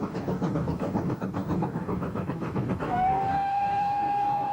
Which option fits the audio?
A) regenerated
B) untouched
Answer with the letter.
A